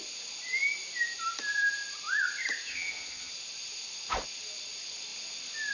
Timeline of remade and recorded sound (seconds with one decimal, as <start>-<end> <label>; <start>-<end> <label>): 0.0-2.7 recorded; 2.7-3.3 remade; 3.3-5.7 recorded